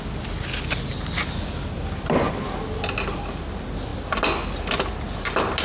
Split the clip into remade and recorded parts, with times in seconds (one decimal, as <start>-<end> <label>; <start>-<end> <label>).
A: 0.0-5.6 recorded